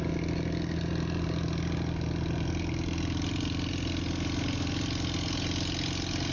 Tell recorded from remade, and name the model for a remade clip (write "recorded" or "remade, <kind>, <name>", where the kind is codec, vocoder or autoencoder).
recorded